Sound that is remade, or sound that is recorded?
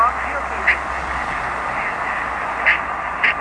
recorded